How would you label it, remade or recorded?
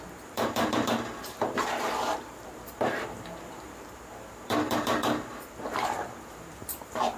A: remade